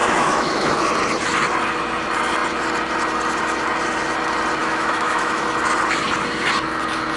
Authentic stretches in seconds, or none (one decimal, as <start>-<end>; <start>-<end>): 0.7-4.6; 5.4-7.2